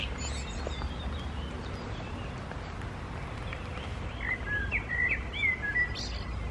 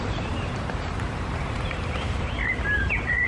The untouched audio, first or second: first